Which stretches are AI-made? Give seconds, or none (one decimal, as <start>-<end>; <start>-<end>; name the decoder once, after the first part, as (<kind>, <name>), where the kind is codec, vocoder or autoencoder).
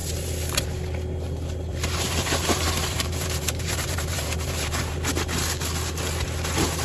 1.7-4.9 (vocoder, BigVGAN v2)